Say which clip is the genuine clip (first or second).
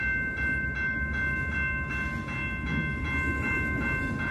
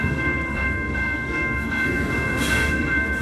first